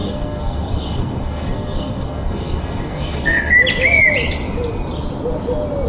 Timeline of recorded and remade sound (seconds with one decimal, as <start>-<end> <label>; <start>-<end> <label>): 0.0-3.5 remade; 3.5-5.9 recorded